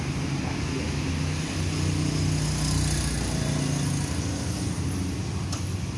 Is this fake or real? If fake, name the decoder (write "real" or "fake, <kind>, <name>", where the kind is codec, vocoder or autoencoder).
real